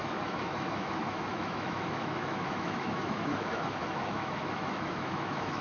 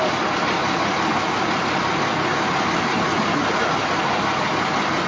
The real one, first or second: second